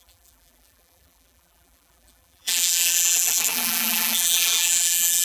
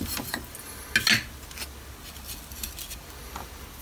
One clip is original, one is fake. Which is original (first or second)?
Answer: second